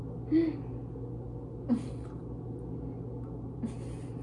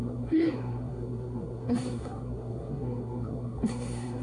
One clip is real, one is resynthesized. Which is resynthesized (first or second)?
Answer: second